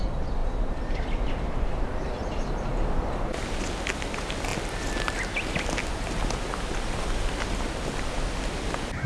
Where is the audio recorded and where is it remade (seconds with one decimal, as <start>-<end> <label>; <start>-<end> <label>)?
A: 0.0-9.1 recorded